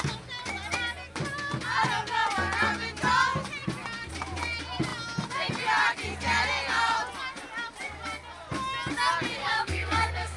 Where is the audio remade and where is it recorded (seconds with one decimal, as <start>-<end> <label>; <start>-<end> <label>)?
0.0-9.4 recorded; 9.4-10.4 remade